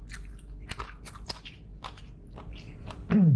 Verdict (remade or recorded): recorded